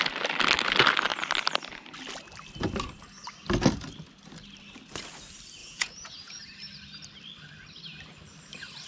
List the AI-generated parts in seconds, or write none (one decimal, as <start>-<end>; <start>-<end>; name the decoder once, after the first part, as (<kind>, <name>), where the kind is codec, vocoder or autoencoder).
5.6-6.4 (vocoder, Vocos)